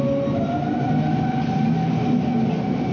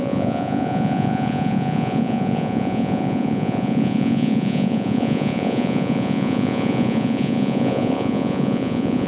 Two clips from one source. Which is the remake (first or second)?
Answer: second